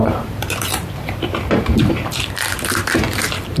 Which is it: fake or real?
fake